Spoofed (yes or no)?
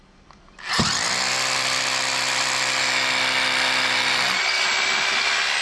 no